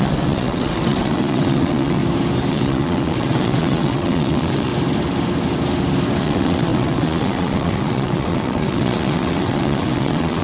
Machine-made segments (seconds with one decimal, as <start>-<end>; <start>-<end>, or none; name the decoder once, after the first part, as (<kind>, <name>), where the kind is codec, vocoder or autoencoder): 0.0-2.0 (vocoder, WaveNeXt); 2.5-4.7; 6.2-10.4